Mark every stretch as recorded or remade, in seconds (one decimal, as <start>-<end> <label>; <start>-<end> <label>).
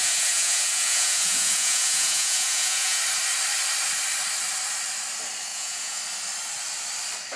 0.0-3.0 remade; 3.0-5.5 recorded; 5.5-6.0 remade; 6.0-7.4 recorded